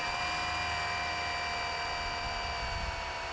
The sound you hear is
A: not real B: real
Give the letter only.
B